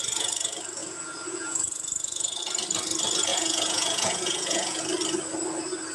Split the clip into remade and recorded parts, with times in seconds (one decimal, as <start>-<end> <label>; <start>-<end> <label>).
0.0-0.8 recorded; 0.8-2.4 remade; 2.4-3.3 recorded; 3.3-4.8 remade; 4.8-5.9 recorded